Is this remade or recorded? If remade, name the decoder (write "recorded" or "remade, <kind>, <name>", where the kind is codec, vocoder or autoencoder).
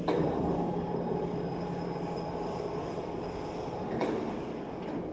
recorded